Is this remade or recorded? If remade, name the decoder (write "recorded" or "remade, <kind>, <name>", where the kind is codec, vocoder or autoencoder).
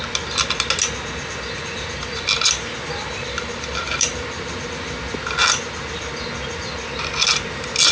recorded